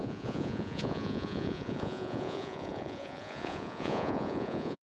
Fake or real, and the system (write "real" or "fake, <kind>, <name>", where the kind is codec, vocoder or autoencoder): fake, vocoder, Vocos